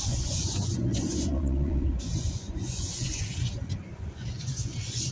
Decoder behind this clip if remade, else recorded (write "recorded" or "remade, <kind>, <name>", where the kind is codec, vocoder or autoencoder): remade, vocoder, Vocos